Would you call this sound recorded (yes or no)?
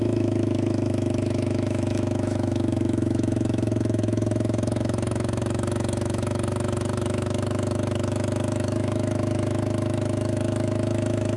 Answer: no